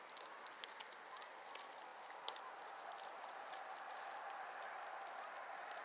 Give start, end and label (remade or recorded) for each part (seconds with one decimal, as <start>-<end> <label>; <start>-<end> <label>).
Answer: 0.0-5.8 recorded